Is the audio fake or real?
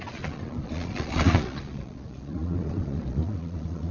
fake